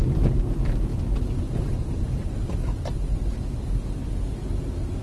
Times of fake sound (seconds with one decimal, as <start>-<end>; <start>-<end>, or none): none